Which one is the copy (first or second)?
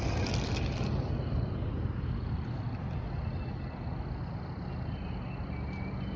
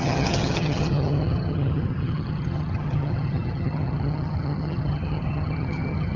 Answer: second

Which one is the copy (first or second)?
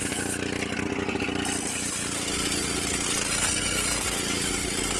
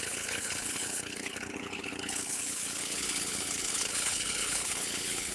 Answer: second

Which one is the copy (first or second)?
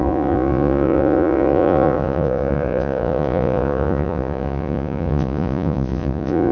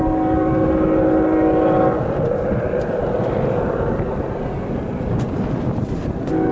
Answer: first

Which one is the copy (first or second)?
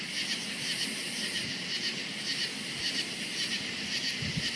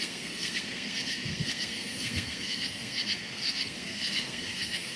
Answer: second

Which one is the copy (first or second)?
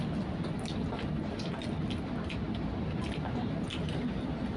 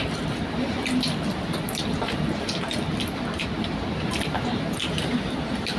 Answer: second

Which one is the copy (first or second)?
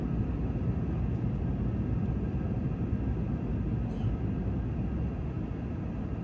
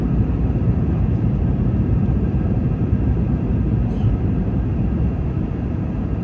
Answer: second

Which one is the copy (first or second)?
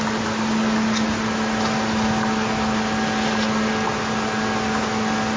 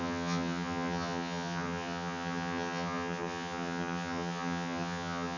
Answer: second